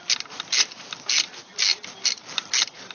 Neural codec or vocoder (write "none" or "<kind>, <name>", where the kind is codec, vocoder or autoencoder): none